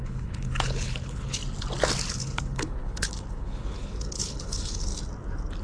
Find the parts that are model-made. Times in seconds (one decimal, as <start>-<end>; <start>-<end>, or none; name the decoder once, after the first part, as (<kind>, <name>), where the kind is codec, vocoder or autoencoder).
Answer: 0.0-1.4 (codec, HILCodec); 2.1-4.9